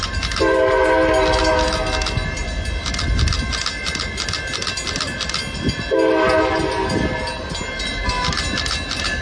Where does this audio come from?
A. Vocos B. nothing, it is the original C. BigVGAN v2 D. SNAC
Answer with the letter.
B